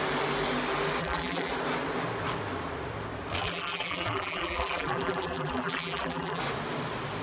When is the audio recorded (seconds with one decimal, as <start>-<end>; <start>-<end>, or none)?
0.0-1.0; 1.5-3.4; 6.4-7.2